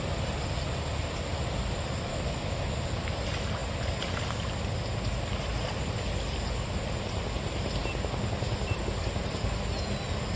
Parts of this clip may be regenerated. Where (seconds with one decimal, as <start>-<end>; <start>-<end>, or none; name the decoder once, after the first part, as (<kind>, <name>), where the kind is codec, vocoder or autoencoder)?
2.1-2.8 (autoencoder, DAC-VAE)